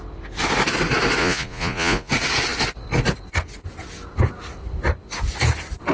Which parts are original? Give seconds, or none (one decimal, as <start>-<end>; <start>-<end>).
0.0-1.2; 2.1-5.9